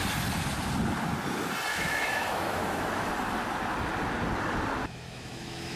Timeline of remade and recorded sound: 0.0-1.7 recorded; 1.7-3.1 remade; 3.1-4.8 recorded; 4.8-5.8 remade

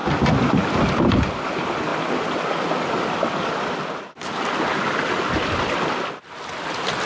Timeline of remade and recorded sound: 0.0-7.1 recorded

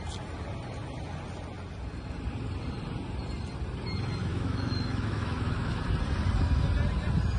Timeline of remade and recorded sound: 0.0-4.3 recorded; 4.3-5.8 remade; 5.8-7.4 recorded

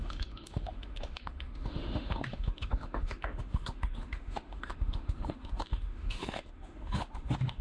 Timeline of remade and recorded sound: 0.0-7.6 remade

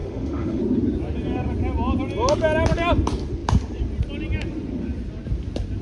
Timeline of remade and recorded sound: 0.0-0.6 remade; 0.6-5.8 recorded